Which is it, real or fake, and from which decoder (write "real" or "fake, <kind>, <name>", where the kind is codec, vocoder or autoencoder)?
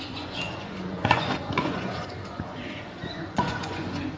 fake, vocoder, Vocos